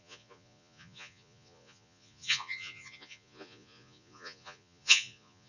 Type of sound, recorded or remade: remade